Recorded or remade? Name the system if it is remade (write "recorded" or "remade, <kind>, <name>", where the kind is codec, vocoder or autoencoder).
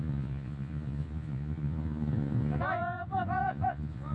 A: remade, vocoder, Vocos